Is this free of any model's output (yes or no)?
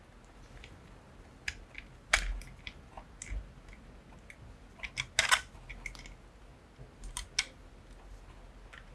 yes